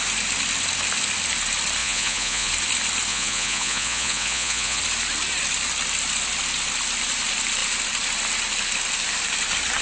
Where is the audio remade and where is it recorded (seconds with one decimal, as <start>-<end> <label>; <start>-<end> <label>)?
0.0-1.8 recorded; 1.8-2.5 remade; 2.5-3.1 recorded; 3.1-4.8 remade; 4.8-9.8 recorded